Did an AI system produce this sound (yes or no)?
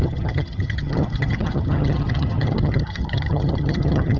yes